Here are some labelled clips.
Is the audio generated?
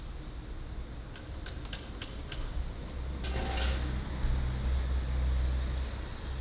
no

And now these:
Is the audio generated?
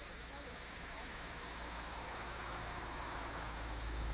yes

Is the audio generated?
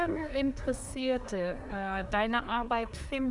yes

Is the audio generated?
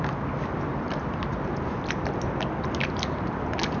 no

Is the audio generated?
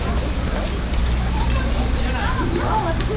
no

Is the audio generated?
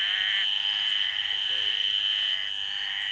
no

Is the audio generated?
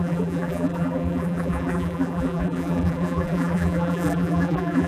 yes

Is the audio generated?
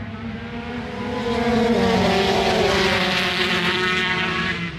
yes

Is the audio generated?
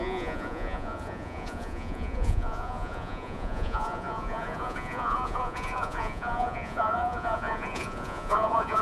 yes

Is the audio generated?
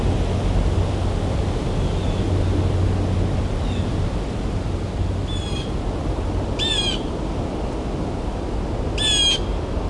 no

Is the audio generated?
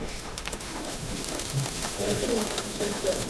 yes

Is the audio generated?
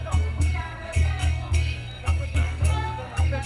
yes